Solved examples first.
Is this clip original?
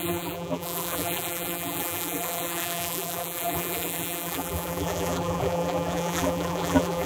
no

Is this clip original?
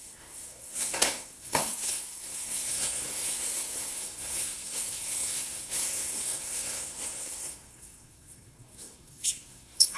no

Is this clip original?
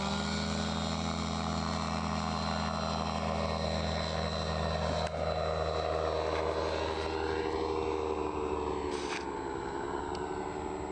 yes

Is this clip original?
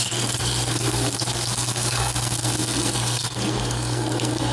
no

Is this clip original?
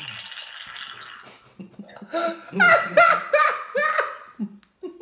yes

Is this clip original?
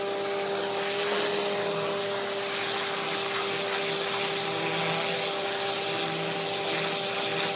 yes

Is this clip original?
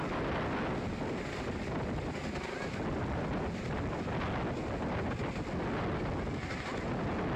yes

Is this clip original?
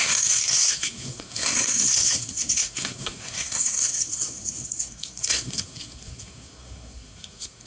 no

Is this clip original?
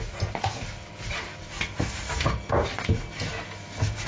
yes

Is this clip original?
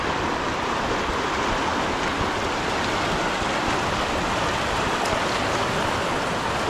yes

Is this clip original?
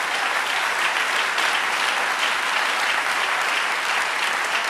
yes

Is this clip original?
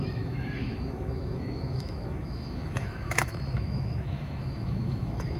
no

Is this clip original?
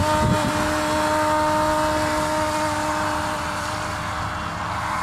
yes